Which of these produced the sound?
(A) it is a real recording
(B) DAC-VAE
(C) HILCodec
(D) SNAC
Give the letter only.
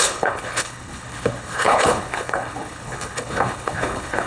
C